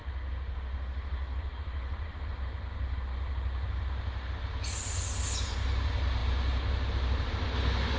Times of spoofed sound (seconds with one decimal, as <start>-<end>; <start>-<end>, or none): none